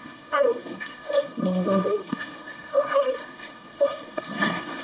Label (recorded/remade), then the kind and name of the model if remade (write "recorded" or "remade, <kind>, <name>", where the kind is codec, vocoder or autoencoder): remade, codec, SNAC